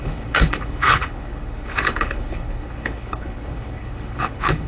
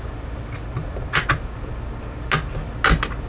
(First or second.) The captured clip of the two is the second